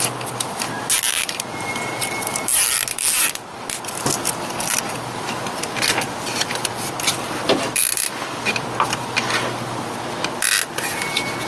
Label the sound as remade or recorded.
recorded